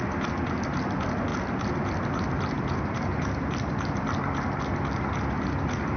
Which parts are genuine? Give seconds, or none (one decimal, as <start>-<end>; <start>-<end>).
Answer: 0.0-6.0